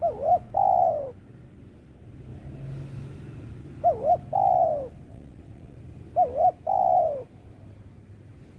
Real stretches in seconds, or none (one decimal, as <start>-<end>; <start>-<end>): 0.0-5.1; 5.8-8.6